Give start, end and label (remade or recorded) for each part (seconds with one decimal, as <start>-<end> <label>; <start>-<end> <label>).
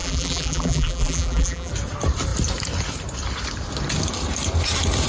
0.0-1.7 remade; 1.7-5.1 recorded